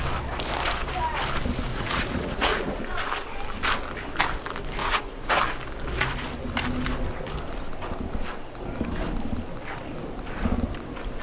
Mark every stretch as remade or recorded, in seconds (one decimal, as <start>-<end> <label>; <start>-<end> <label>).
0.0-1.7 recorded; 1.7-2.8 remade; 2.8-4.8 recorded; 4.8-5.4 remade; 5.4-11.2 recorded